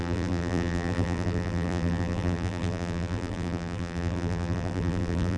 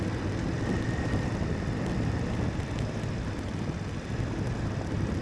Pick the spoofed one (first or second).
first